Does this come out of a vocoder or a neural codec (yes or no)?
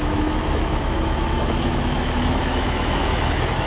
yes